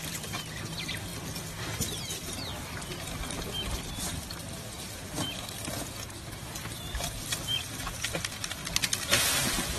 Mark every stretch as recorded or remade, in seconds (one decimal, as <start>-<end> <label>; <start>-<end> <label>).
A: 0.0-1.1 remade; 1.1-2.5 recorded; 2.5-8.6 remade; 8.6-9.4 recorded; 9.4-9.8 remade